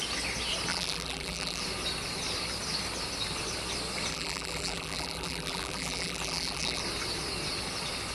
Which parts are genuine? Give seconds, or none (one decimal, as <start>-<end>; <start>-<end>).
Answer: 0.0-0.7; 1.6-4.1; 6.8-8.1